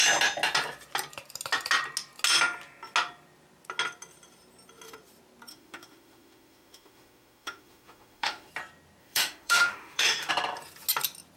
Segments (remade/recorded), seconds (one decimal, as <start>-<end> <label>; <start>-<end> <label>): 0.0-5.5 recorded; 5.5-8.5 remade; 8.5-9.0 recorded; 9.0-10.3 remade; 10.3-11.4 recorded